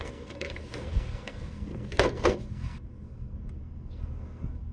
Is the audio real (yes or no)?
no